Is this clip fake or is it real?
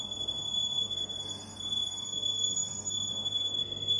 fake